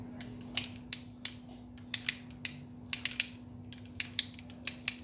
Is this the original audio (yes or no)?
yes